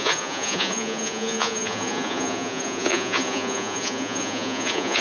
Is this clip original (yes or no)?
no